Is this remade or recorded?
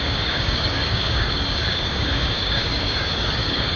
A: remade